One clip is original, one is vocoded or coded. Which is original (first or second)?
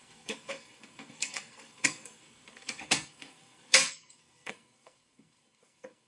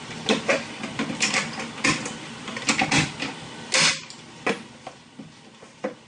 second